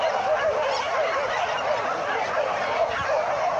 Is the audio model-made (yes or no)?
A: no